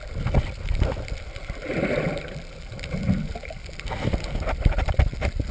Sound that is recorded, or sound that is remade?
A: recorded